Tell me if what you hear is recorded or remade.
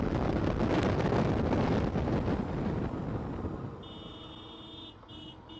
recorded